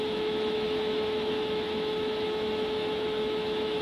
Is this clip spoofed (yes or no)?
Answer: yes